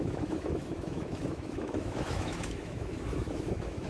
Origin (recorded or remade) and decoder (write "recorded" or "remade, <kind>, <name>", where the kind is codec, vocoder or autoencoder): remade, autoencoder, DAC-VAE